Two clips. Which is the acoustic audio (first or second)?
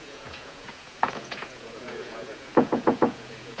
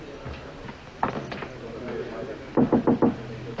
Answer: second